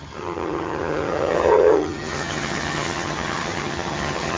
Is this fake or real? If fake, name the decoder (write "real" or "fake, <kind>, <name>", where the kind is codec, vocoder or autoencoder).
fake, vocoder, HiFi-GAN